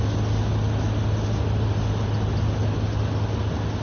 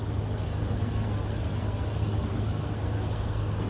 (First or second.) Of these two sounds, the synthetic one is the second